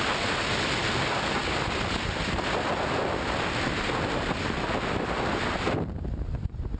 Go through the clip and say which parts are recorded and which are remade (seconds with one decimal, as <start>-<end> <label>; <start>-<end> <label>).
0.0-6.8 recorded